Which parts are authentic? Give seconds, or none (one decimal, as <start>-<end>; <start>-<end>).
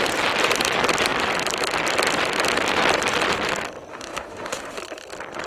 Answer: 0.0-3.9; 4.8-5.5